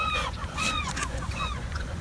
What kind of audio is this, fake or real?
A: fake